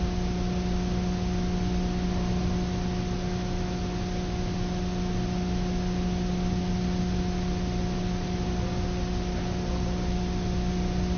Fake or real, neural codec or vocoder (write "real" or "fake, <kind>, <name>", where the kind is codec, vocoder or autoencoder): real